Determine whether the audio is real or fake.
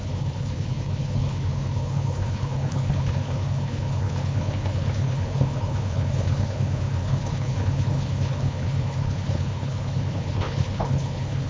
fake